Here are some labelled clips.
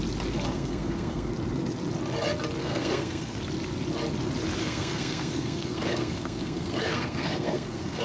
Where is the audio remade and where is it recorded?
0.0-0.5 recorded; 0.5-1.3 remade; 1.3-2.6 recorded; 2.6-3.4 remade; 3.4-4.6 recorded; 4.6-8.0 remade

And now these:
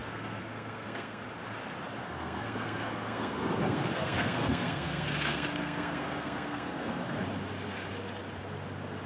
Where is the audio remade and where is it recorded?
0.0-1.2 remade; 1.2-2.0 recorded; 2.0-7.2 remade; 7.2-9.1 recorded